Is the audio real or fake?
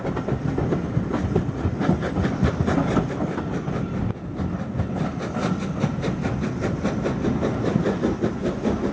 real